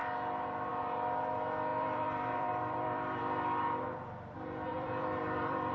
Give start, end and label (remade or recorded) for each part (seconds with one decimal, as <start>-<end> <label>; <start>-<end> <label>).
0.0-1.7 recorded; 1.7-3.2 remade; 3.2-4.7 recorded; 4.7-5.7 remade